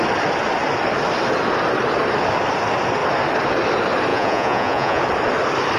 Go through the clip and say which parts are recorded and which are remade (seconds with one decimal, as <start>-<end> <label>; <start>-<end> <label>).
0.0-4.1 recorded; 4.1-5.0 remade; 5.0-5.8 recorded